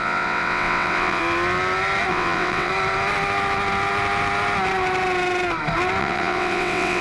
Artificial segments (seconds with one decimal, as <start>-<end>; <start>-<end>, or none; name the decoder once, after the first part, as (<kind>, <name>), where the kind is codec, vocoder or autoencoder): 0.0-1.2 (vocoder, WaveNeXt); 2.1-2.7; 6.0-7.0